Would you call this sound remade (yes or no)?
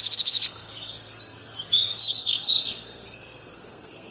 yes